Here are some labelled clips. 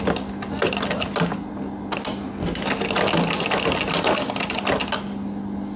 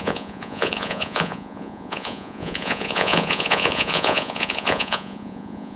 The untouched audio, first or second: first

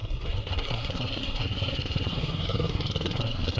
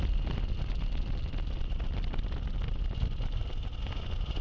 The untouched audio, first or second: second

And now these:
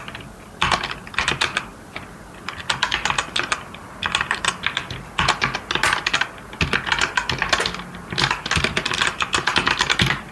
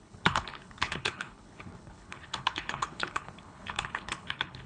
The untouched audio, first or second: first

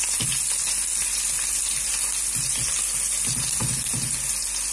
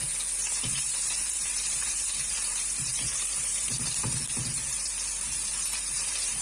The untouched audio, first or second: first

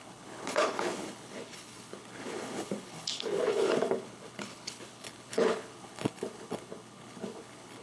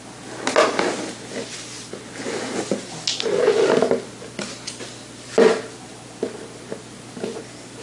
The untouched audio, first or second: second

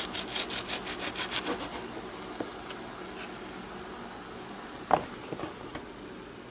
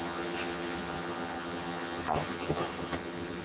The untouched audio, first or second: first